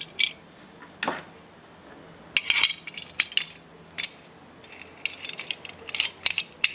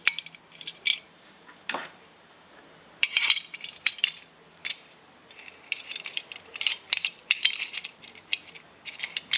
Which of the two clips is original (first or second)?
first